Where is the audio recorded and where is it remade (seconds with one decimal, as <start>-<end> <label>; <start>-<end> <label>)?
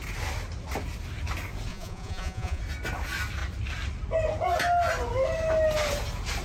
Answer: 0.0-1.7 recorded; 1.7-2.6 remade; 2.6-6.4 recorded